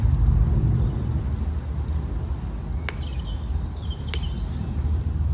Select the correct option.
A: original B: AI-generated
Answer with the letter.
A